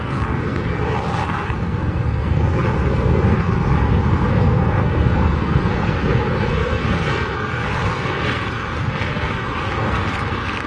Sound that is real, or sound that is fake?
fake